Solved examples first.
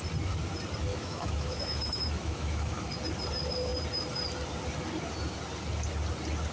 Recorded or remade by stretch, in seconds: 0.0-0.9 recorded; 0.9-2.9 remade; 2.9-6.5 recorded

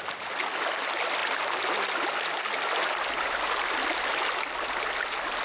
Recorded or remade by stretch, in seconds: 0.0-5.4 recorded

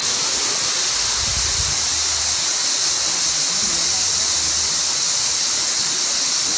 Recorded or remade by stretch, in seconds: 0.0-6.6 recorded

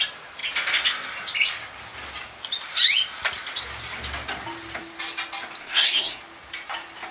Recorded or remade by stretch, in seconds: 0.0-5.6 recorded; 5.6-6.2 remade; 6.2-7.1 recorded

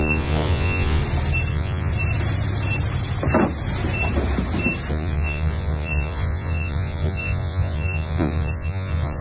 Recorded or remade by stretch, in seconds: 0.0-1.0 remade; 1.0-1.5 recorded; 1.5-1.9 remade; 1.9-4.9 recorded; 4.9-9.2 remade

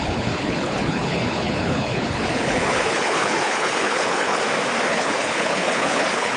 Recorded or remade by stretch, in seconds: 0.0-4.4 remade; 4.4-4.9 recorded; 4.9-6.4 remade

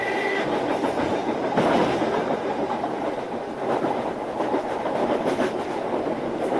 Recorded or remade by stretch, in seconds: 0.0-5.0 remade; 5.0-5.7 recorded; 5.7-6.6 remade

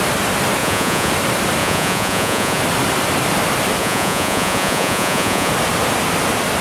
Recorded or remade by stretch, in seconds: 0.0-0.6 recorded; 0.6-1.1 remade; 1.1-1.6 recorded; 1.6-2.6 remade; 2.6-3.8 recorded; 3.8-5.5 remade; 5.5-6.6 recorded